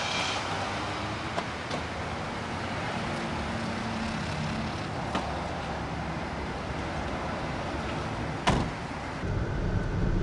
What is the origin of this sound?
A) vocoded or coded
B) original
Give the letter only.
B